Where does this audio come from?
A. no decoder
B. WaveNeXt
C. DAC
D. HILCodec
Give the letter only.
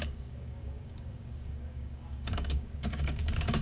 C